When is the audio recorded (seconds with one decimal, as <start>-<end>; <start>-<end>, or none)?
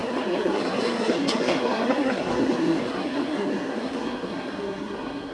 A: none